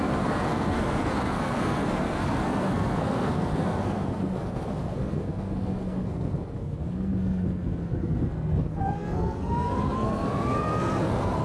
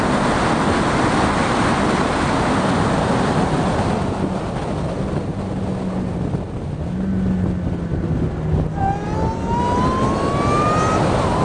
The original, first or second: second